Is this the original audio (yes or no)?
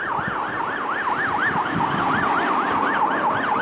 yes